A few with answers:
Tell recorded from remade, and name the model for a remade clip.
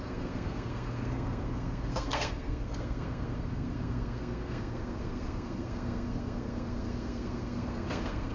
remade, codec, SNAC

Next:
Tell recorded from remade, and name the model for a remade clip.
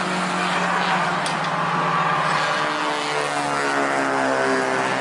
recorded